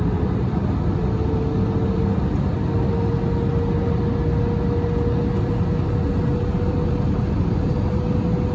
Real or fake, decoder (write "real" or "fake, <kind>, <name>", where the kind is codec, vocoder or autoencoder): real